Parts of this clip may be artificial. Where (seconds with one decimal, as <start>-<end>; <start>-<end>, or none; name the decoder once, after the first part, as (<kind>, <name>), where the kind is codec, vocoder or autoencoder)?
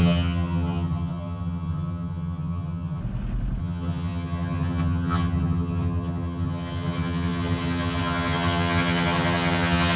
0.0-3.0 (vocoder, HiFi-GAN); 3.6-10.0